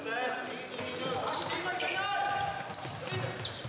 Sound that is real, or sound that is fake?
real